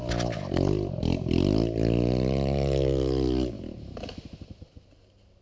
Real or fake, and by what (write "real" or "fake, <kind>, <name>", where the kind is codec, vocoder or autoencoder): real